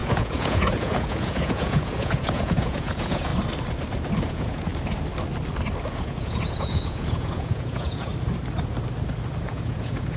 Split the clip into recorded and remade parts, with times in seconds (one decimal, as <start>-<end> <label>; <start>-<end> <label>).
0.0-3.3 remade; 3.3-4.3 recorded; 4.3-4.7 remade; 4.7-5.9 recorded; 5.9-8.1 remade; 8.1-9.4 recorded; 9.4-10.2 remade